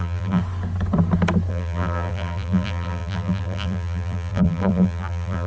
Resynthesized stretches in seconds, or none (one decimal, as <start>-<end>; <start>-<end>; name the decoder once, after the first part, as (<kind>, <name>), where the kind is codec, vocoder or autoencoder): 0.0-0.4 (vocoder, BigVGAN v2); 1.5-5.5